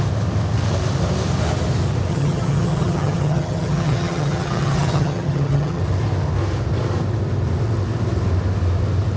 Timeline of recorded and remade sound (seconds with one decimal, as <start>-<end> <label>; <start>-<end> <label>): 0.0-2.1 recorded; 2.1-5.8 remade; 5.8-9.2 recorded